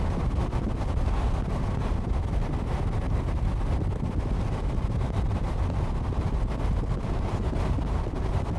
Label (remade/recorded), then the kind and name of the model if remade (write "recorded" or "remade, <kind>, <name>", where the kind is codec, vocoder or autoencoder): recorded